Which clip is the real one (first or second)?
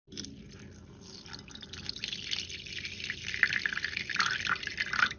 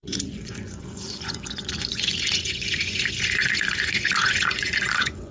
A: first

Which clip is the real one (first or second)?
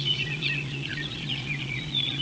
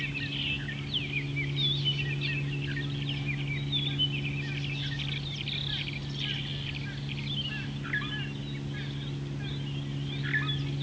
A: second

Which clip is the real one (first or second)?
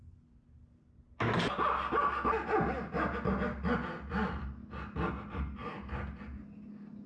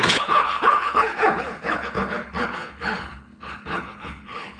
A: first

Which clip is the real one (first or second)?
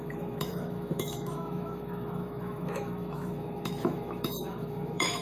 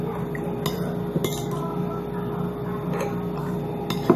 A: second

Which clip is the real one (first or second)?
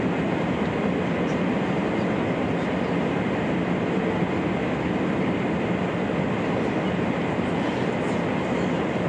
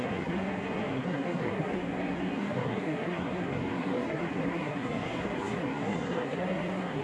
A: first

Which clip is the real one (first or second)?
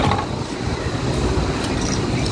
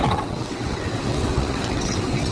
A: first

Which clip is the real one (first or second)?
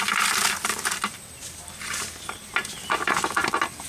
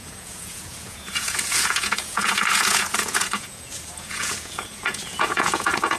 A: first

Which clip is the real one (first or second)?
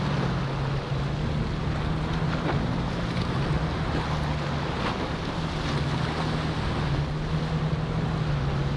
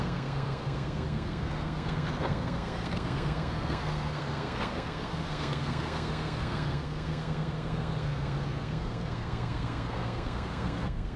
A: first